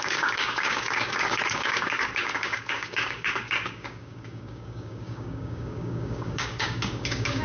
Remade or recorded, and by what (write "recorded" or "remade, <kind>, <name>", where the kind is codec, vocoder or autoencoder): remade, codec, DAC